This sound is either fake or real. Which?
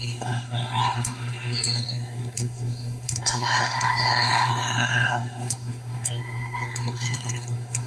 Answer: fake